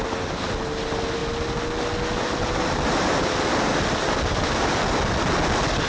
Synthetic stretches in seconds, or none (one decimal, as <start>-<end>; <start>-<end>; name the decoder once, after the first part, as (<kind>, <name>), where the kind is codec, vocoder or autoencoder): none